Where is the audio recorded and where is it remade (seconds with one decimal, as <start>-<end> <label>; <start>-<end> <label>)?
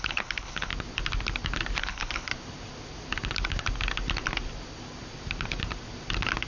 0.0-0.7 remade; 0.7-1.8 recorded; 1.8-2.3 remade; 2.3-6.5 recorded